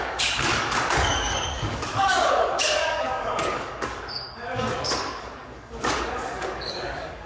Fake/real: fake